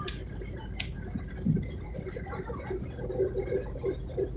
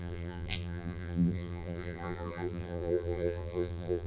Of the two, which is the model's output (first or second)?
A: second